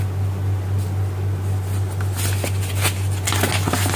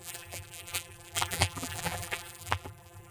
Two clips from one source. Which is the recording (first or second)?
first